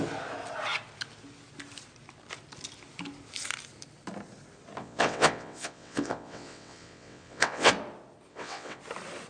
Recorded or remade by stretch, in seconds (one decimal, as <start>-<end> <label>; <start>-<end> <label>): 0.0-4.8 recorded; 4.8-7.7 remade; 7.7-8.3 recorded; 8.3-8.8 remade; 8.8-9.3 recorded